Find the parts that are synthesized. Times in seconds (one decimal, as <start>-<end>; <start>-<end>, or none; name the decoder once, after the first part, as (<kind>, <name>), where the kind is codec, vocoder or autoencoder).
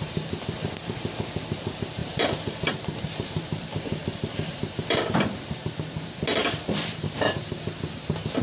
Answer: 2.0-5.7 (vocoder, BigVGAN v2); 6.4-7.6